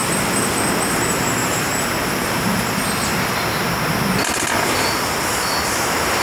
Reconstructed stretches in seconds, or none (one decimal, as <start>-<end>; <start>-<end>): 0.9-2.8; 5.3-6.2